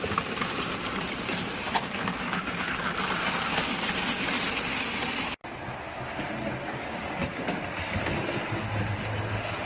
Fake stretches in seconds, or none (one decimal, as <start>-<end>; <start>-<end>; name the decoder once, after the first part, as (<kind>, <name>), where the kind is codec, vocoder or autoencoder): none